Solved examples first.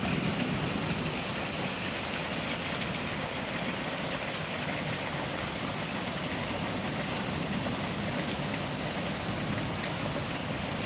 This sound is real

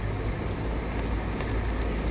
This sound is real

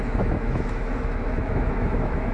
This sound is fake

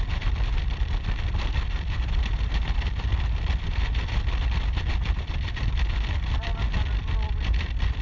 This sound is fake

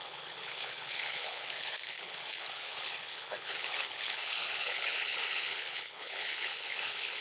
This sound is fake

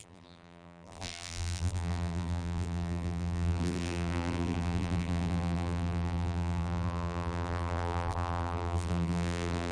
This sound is fake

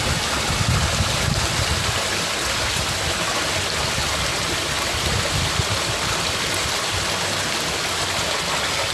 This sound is real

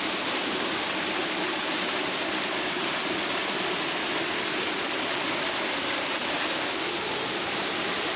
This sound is real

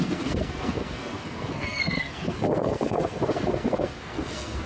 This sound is fake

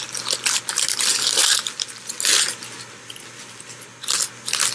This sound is real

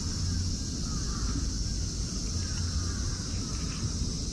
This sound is real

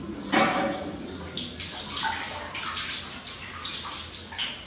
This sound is real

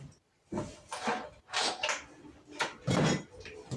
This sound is real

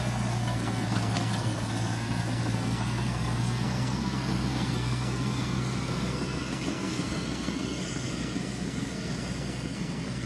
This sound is fake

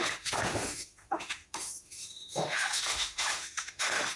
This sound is fake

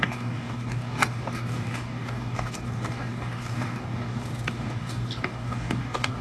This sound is fake